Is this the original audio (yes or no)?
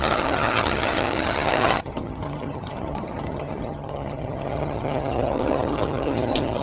no